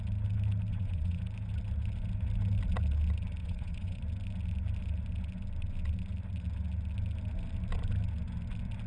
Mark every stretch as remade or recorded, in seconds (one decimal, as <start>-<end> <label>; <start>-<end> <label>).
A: 0.0-0.7 recorded; 0.7-1.2 remade; 1.2-3.4 recorded; 3.4-4.0 remade; 4.0-8.9 recorded